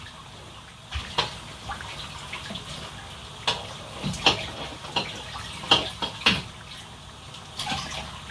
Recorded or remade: recorded